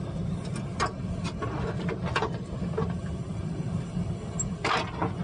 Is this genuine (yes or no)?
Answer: yes